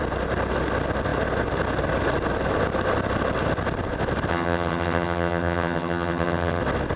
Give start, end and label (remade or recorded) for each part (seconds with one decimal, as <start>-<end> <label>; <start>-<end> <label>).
0.0-4.3 recorded; 4.3-6.6 remade; 6.6-7.0 recorded